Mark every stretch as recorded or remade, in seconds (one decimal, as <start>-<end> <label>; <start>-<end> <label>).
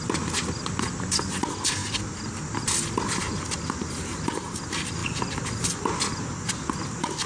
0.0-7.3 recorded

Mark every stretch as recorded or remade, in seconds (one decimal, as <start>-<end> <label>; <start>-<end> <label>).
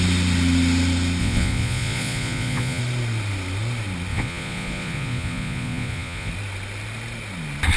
0.0-1.2 recorded; 1.2-2.8 remade; 2.8-4.1 recorded; 4.1-6.3 remade; 6.3-7.8 recorded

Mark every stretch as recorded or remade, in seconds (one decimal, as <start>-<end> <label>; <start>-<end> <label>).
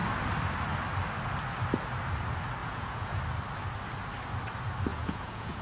0.0-2.6 recorded; 2.6-3.2 remade; 3.2-4.9 recorded; 4.9-5.6 remade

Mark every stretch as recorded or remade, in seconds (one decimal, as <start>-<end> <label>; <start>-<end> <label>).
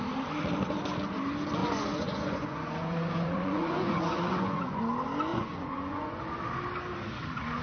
0.0-1.6 recorded; 1.6-4.8 remade; 4.8-5.3 recorded; 5.3-6.2 remade; 6.2-7.6 recorded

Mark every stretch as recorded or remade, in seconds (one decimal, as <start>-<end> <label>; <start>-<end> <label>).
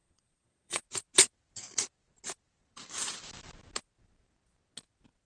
0.0-0.8 remade; 0.8-5.2 recorded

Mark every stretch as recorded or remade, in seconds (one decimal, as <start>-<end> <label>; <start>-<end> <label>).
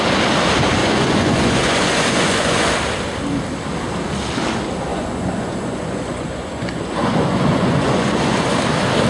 0.0-0.8 recorded; 0.8-2.7 remade; 2.7-4.9 recorded; 4.9-8.6 remade; 8.6-9.1 recorded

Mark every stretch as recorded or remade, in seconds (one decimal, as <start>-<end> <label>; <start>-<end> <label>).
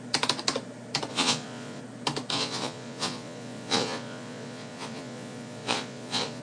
0.0-1.1 recorded; 1.1-1.8 remade; 1.8-2.3 recorded; 2.3-6.4 remade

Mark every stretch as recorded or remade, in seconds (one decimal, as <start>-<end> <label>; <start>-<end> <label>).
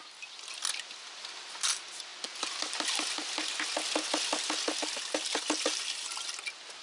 0.0-6.8 recorded